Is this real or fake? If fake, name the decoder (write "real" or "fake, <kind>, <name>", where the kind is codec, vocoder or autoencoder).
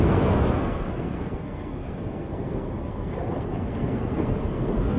fake, codec, SNAC